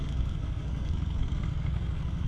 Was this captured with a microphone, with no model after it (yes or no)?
no